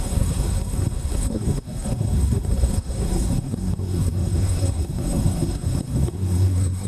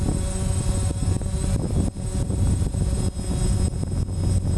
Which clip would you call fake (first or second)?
first